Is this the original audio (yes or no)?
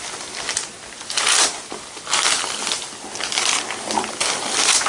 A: yes